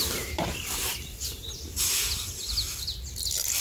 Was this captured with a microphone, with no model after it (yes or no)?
yes